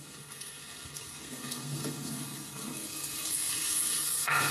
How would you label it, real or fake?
fake